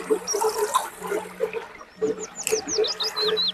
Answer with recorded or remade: recorded